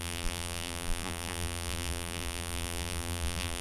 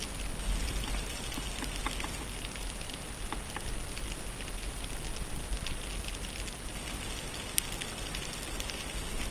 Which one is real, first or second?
second